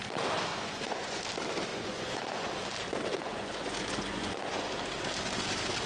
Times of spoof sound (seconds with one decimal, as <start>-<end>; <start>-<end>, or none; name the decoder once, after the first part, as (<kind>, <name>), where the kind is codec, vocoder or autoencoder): 0.5-1.2 (vocoder, Vocos); 1.7-2.5; 3.1-4.7